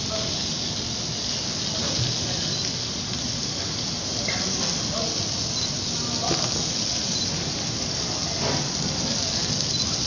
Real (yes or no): yes